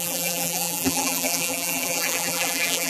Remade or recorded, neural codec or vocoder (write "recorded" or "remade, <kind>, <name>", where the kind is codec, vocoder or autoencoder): remade, vocoder, BigVGAN v2